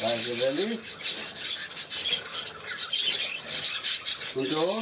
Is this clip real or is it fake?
real